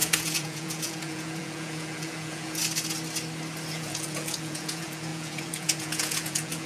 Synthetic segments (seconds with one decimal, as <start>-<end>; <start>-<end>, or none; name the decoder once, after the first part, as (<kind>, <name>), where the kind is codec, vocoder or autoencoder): 0.0-2.6 (vocoder, Vocos); 3.7-6.7